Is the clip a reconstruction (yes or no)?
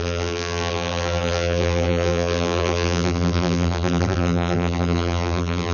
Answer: yes